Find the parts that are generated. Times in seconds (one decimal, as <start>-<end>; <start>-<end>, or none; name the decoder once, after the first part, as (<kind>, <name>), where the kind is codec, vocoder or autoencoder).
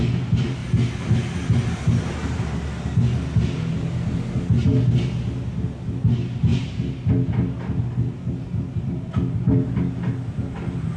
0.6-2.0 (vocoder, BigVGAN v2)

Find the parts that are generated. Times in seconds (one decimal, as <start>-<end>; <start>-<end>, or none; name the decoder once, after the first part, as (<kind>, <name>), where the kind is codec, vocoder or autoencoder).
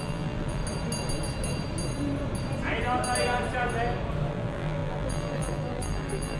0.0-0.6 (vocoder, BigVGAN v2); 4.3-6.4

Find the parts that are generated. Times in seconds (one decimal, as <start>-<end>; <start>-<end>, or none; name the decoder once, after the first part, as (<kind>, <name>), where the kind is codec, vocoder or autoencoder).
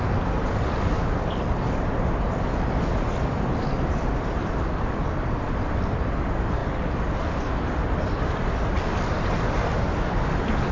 none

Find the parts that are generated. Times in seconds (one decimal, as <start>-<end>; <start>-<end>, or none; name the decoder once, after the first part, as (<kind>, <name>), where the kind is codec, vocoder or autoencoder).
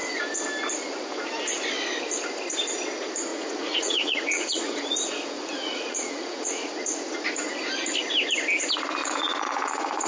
3.3-6.7 (vocoder, Vocos); 9.0-10.1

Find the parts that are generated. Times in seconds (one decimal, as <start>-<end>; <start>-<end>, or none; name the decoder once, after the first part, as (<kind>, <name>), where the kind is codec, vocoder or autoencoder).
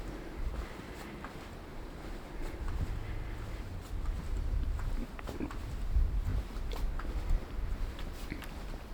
1.7-2.9 (vocoder, BigVGAN v2)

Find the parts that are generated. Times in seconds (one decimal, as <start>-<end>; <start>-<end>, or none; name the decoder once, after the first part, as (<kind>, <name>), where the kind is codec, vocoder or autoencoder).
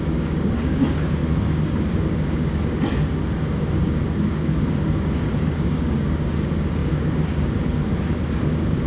0.0-8.9 (codec, DAC)